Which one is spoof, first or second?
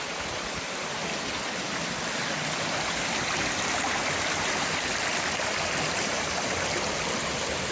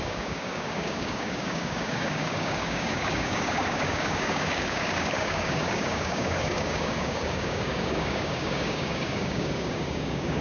second